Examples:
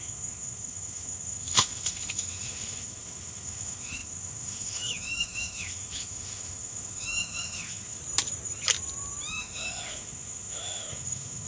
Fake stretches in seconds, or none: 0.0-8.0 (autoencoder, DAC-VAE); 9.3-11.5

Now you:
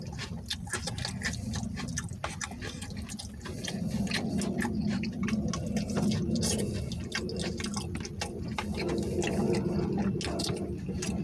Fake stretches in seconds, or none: none

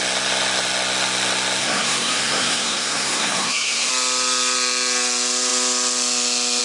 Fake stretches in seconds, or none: 1.6-3.9 (codec, SNAC)

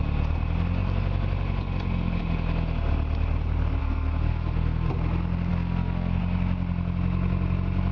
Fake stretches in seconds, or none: 3.8-4.9 (codec, SNAC); 5.5-6.2

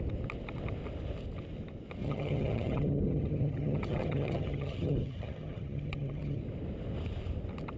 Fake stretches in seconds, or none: 2.0-6.4 (vocoder, HiFi-GAN)

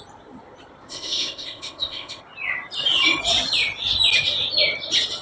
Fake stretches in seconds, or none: 0.9-2.2 (codec, ZipCodec)

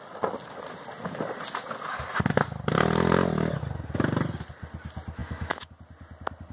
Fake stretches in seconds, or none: 5.2-5.7 (autoencoder, DAC-VAE)